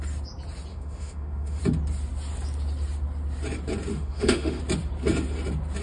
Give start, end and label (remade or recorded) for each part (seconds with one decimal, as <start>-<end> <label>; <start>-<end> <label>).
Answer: 0.0-0.7 recorded; 0.7-1.6 remade; 1.6-3.9 recorded; 3.9-4.6 remade; 4.6-5.8 recorded